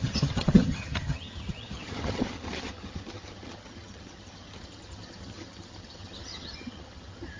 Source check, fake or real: fake